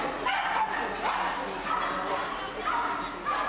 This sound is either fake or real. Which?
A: real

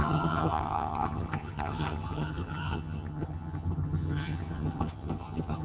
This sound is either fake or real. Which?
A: fake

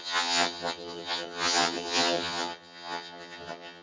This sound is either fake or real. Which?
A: fake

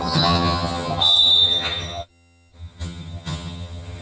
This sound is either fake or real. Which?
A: fake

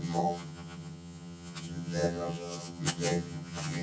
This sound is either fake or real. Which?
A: fake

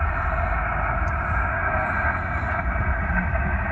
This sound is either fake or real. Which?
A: real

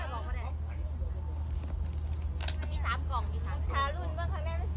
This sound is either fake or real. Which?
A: real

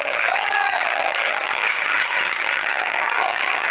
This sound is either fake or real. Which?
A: fake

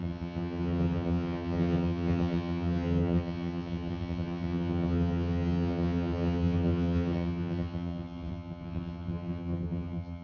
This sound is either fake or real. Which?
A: fake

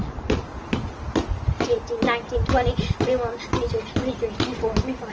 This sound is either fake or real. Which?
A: real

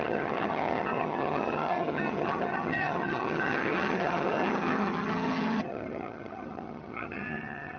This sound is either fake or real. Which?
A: fake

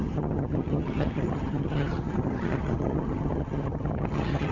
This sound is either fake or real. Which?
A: fake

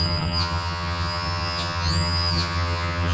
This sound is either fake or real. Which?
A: fake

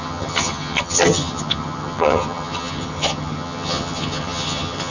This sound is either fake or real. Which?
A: fake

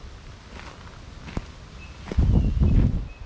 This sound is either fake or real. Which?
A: real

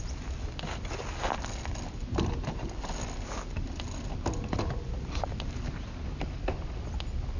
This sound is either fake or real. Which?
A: real